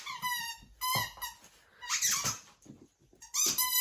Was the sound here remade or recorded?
recorded